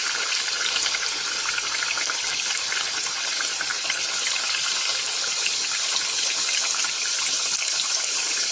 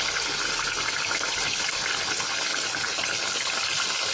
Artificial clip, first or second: first